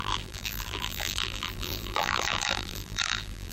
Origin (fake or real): fake